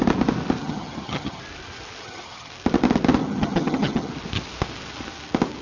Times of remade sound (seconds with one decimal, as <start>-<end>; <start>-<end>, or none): 0.6-1.4; 2.0-2.5; 3.2-4.1